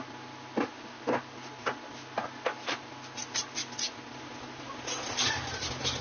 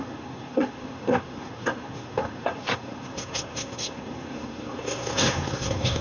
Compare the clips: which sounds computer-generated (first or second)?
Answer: second